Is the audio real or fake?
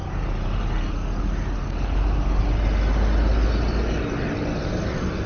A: real